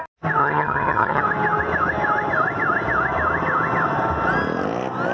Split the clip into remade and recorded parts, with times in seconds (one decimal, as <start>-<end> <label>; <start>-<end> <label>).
0.0-0.4 recorded; 0.4-1.2 remade; 1.2-5.1 recorded